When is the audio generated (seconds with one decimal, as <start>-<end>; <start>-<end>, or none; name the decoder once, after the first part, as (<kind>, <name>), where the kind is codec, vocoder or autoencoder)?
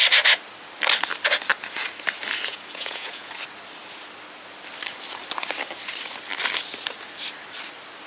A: 2.5-3.3 (vocoder, Vocos)